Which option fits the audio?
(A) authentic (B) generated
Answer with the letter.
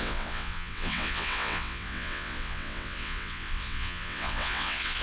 B